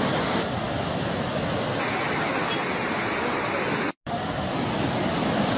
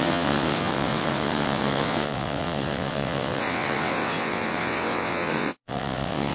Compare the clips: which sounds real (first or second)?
first